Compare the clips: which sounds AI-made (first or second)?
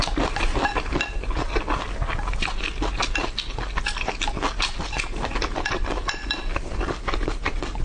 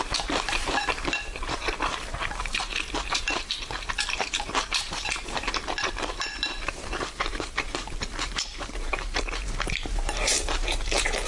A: second